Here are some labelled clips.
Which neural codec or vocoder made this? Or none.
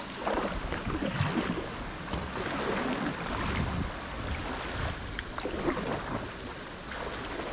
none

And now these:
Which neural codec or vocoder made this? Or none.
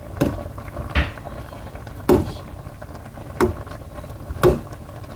none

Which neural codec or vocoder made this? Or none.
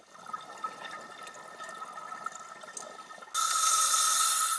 none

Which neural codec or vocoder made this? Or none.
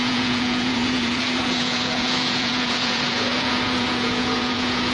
vocoder, Vocos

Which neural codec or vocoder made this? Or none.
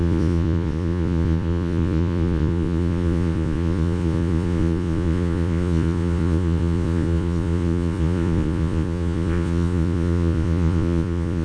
vocoder, Vocos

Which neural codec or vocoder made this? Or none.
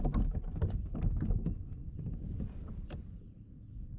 none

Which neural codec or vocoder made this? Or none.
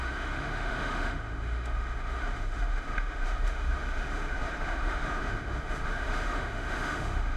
autoencoder, DAC-VAE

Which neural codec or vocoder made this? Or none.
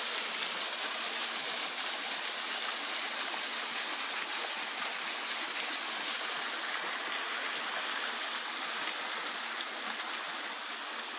none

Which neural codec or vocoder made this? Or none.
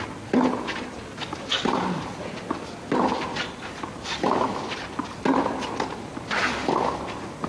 none